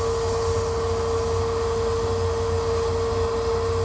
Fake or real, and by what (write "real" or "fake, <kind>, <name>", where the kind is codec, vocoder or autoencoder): real